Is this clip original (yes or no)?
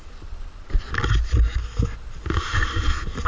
yes